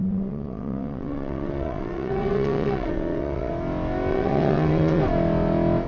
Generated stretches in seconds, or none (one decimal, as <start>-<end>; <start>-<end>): 0.0-3.5; 4.1-5.0